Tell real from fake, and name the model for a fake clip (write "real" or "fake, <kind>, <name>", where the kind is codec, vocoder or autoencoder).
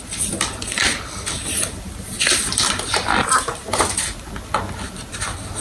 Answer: real